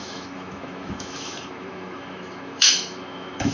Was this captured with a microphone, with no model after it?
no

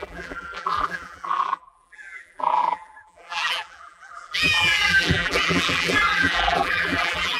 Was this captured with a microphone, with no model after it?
no